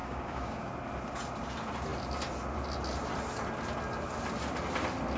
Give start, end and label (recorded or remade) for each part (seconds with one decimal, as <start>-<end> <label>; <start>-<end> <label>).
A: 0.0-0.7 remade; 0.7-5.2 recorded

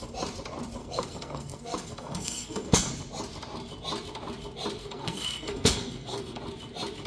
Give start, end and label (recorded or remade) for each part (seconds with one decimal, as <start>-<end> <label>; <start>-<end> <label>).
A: 0.0-0.8 recorded; 0.8-2.9 remade; 2.9-4.8 recorded; 4.8-6.4 remade; 6.4-7.1 recorded

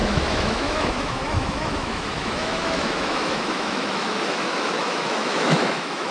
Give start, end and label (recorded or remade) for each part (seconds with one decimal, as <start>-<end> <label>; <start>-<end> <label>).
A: 0.0-6.1 remade